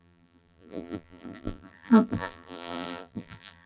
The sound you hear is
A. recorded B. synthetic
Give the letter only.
B